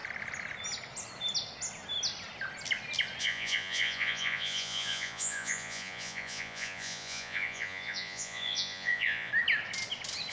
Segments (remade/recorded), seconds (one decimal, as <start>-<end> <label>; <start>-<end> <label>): 0.0-3.2 recorded; 3.2-9.3 remade; 9.3-10.3 recorded